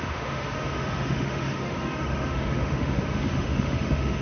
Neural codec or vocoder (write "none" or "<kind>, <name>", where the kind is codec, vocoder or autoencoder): autoencoder, DAC-VAE